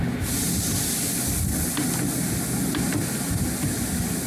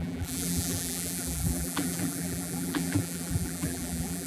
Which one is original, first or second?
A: first